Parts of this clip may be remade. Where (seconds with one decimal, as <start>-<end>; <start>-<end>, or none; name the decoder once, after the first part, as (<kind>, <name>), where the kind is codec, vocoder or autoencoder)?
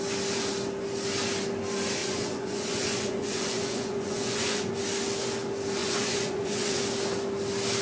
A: 2.0-4.7 (vocoder, Vocos); 5.8-6.8